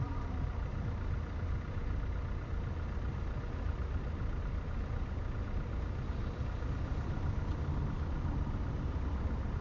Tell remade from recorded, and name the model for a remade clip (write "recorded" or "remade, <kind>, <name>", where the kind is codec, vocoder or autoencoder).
recorded